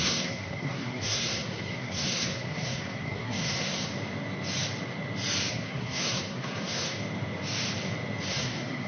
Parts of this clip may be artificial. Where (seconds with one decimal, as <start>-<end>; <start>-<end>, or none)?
0.0-3.9; 5.5-7.0; 8.3-8.9